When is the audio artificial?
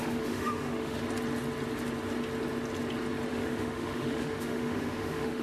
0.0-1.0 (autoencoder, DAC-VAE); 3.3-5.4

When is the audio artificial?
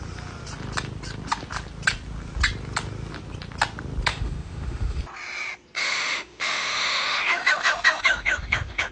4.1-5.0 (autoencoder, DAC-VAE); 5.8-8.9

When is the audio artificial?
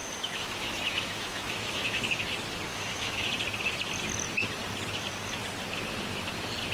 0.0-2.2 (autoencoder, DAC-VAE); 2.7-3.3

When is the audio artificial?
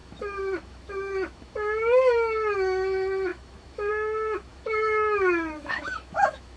0.0-6.6 (autoencoder, DAC-VAE)